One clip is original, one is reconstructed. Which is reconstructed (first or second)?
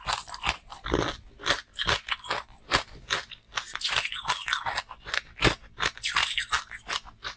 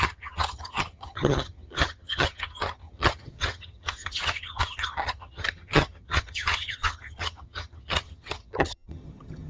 second